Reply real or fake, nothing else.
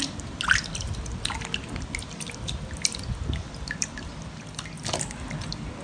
real